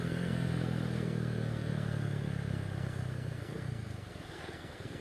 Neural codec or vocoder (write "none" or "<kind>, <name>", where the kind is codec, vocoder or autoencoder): codec, SNAC